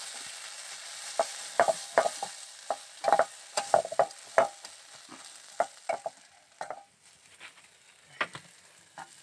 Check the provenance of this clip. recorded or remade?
recorded